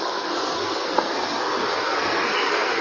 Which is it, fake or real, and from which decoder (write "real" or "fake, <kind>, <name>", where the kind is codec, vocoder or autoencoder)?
fake, codec, SNAC